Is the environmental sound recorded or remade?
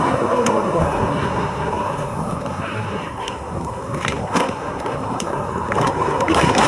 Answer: remade